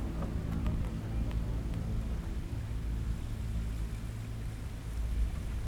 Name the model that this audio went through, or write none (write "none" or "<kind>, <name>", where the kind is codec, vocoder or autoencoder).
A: none